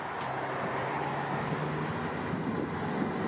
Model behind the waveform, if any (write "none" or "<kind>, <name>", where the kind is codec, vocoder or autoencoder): none